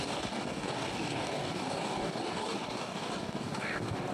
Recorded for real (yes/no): no